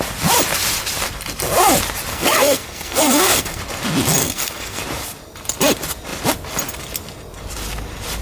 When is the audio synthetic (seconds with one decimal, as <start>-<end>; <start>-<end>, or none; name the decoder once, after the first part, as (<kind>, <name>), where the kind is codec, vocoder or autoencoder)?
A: 2.1-3.6 (codec, SNAC); 4.2-4.8